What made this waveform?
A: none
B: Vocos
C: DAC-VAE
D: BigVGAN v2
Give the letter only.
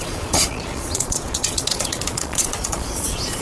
B